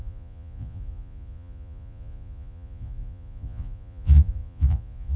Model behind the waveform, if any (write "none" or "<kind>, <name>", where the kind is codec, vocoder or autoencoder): vocoder, Vocos